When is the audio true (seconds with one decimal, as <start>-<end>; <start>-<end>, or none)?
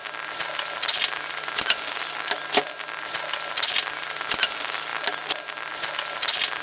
0.0-6.6